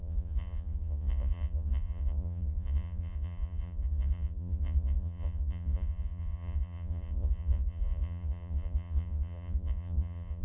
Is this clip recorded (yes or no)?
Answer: no